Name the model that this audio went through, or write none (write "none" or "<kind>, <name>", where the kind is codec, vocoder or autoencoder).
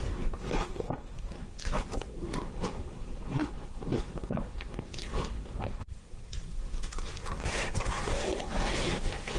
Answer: codec, SNAC